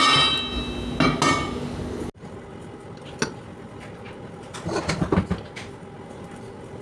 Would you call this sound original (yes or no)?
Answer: yes